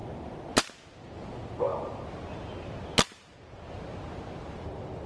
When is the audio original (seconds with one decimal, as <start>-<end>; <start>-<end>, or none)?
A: 0.0-5.1